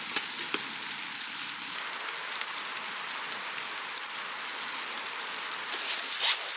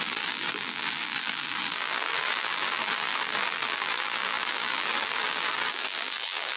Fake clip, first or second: second